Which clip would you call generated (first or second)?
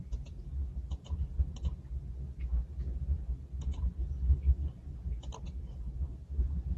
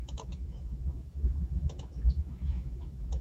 second